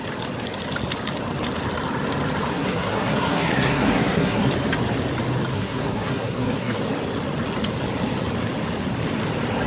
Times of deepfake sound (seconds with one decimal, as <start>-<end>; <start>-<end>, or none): 2.5-4.5; 5.5-6.8